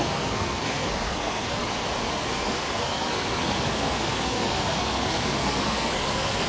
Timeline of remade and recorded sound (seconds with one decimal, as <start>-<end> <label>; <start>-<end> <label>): 0.0-1.6 remade; 1.6-2.1 recorded; 2.1-6.5 remade